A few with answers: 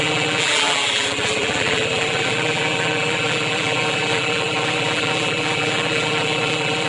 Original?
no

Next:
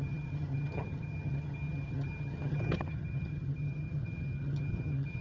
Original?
no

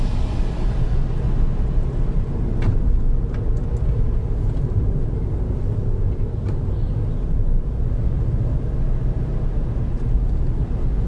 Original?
yes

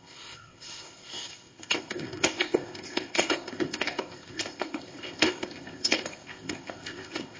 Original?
no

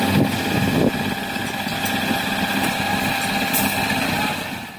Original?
yes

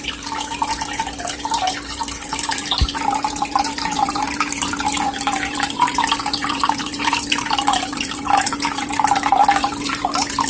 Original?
no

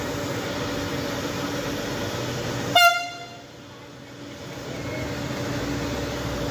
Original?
yes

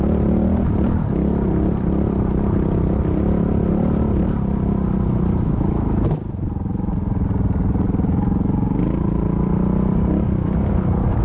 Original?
yes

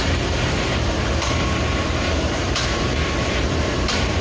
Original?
no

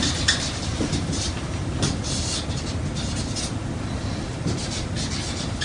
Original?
yes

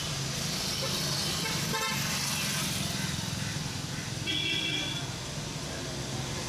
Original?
yes